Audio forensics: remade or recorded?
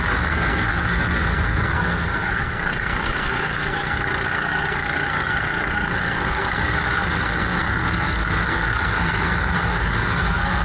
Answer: remade